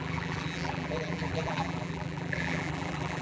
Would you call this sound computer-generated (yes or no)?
yes